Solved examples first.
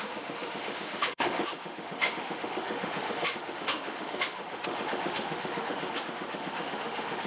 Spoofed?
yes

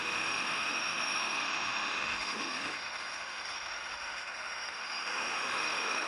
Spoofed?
yes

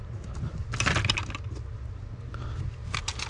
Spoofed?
no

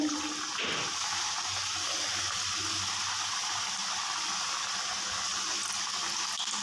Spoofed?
no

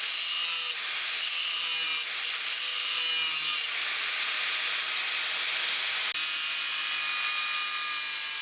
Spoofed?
no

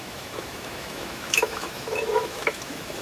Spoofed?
yes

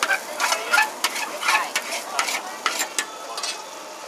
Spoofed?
no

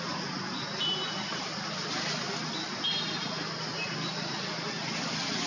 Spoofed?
no